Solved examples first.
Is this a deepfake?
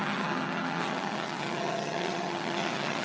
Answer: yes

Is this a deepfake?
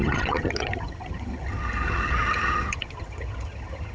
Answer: yes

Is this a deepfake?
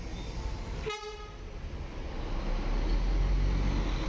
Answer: no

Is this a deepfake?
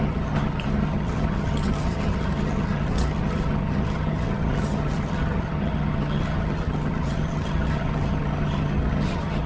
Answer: yes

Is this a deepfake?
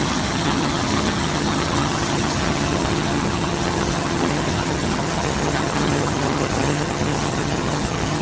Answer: yes